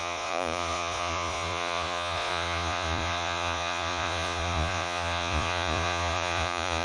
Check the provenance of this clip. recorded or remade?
remade